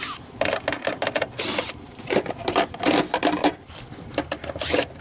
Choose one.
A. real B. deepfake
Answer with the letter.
A